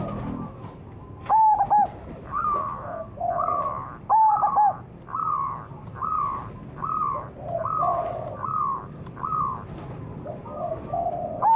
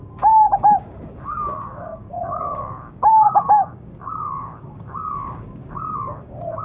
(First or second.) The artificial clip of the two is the second